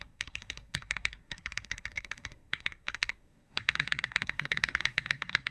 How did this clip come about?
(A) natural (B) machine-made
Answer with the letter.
B